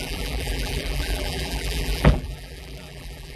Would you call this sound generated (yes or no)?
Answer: yes